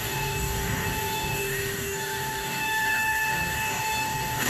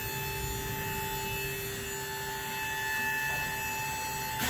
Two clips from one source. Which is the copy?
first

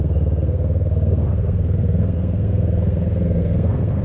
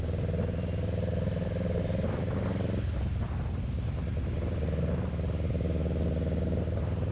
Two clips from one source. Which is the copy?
first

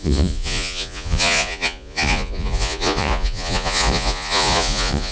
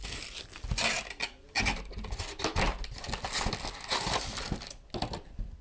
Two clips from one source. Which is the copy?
first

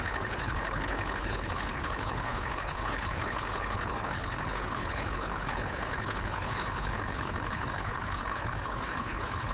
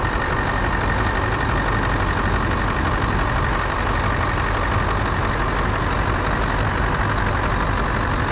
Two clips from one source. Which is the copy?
first